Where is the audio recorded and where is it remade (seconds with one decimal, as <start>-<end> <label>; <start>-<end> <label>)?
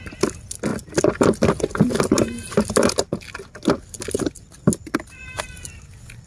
0.0-6.3 recorded